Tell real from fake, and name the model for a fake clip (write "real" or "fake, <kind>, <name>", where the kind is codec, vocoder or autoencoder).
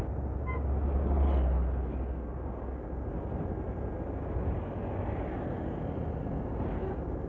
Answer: real